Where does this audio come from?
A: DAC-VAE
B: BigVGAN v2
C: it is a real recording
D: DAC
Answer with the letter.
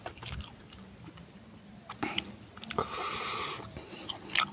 C